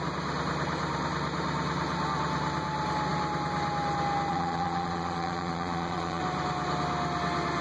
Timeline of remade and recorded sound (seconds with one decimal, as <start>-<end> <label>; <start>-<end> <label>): 0.0-4.3 recorded; 4.3-6.2 remade; 6.2-7.6 recorded